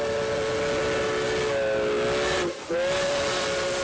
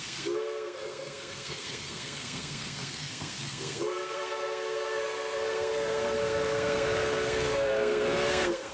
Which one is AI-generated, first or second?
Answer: second